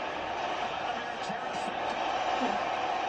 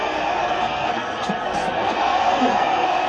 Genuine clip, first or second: first